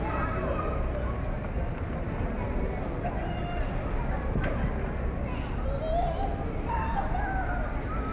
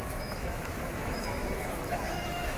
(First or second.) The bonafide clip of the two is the first